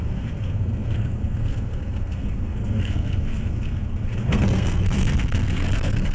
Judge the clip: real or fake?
fake